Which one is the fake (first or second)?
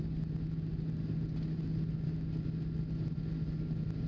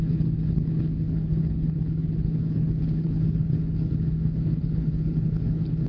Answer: second